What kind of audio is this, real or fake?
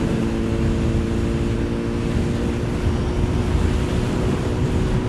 real